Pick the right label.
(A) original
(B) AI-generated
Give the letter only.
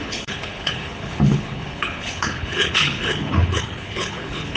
B